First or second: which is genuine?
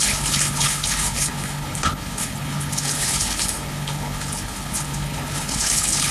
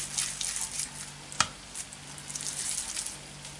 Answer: second